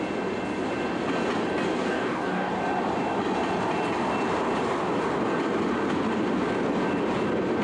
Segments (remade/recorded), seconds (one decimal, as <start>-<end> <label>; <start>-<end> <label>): 0.0-1.8 recorded; 1.8-2.5 remade; 2.5-7.6 recorded